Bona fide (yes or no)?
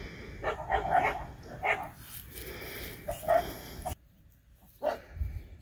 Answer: yes